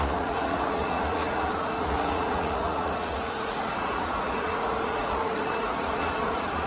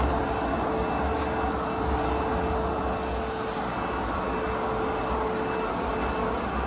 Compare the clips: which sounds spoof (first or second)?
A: first